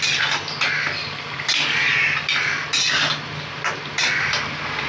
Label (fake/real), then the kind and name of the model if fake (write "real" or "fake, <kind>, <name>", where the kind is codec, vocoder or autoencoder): real